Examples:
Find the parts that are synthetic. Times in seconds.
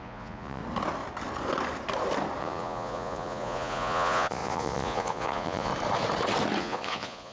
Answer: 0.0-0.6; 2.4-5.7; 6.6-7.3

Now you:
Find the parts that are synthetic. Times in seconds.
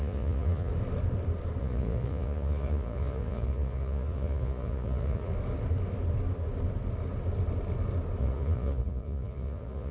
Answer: 0.0-0.7; 1.6-5.3; 8.2-9.9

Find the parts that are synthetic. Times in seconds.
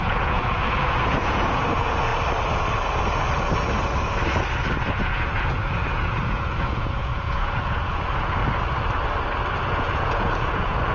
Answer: 0.0-2.1; 4.9-8.4; 9.7-10.9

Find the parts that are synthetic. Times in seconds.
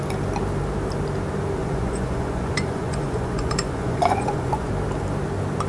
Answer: 1.6-4.7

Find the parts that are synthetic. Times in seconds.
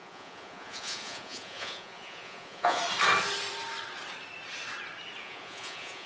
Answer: 0.0-2.8; 5.2-6.1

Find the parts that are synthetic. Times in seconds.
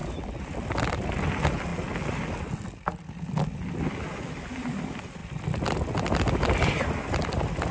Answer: none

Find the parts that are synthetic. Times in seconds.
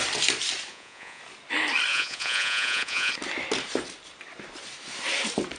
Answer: 0.7-1.2; 1.9-3.1